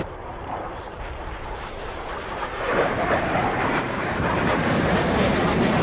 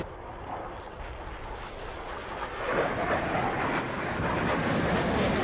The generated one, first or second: first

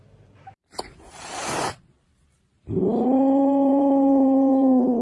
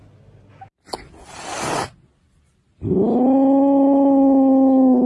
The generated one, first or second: first